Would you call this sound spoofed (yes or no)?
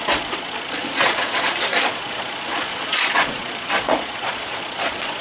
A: yes